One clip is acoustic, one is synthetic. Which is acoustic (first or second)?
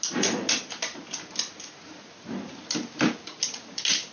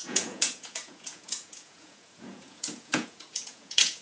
first